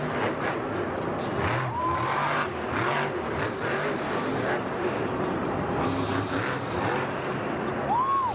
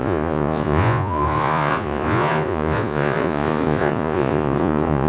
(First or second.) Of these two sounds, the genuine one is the first